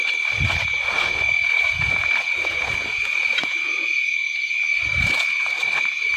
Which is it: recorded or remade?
remade